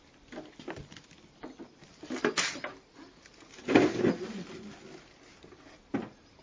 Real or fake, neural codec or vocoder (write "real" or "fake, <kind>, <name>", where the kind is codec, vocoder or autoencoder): real